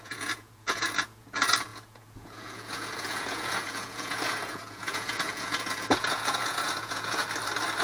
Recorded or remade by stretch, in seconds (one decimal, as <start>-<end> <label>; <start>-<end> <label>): 0.0-7.2 remade; 7.2-7.8 recorded